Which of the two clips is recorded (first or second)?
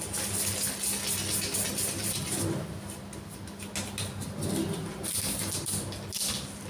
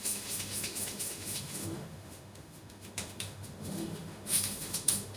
first